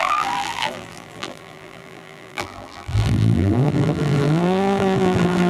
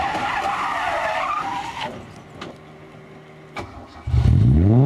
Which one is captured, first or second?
second